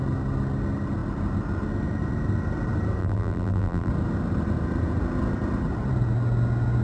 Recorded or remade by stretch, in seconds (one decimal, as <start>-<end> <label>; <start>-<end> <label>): 0.0-3.0 recorded; 3.0-3.9 remade; 3.9-6.8 recorded